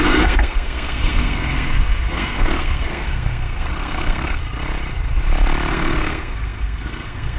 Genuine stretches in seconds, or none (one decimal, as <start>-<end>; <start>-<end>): 4.4-5.7